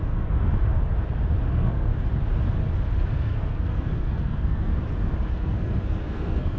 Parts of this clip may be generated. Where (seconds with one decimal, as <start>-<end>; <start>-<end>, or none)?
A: 0.0-0.5; 1.5-1.9; 3.1-4.7; 5.3-6.6